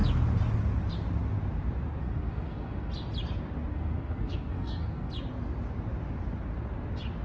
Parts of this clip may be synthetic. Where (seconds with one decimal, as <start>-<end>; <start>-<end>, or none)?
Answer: 2.0-2.9; 3.7-5.1